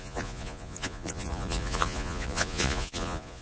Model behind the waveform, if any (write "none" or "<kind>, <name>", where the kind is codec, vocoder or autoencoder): vocoder, Vocos